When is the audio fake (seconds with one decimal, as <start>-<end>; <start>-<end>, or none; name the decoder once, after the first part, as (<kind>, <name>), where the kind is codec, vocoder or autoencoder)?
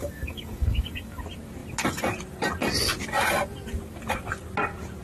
0.0-1.2 (codec, DAC)